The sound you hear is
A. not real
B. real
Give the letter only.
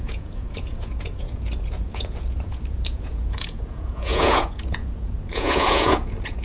A